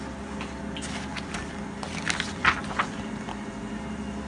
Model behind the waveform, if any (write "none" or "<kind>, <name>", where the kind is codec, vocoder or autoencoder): none